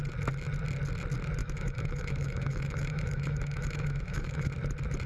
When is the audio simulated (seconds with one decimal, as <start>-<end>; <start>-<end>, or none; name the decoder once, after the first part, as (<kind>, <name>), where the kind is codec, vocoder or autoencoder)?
1.4-4.5 (autoencoder, DAC-VAE)